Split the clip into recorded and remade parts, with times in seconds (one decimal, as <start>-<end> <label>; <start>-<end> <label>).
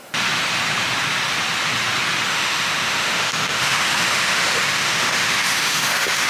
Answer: 0.0-2.3 recorded; 2.3-6.3 remade